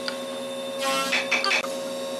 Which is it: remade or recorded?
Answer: recorded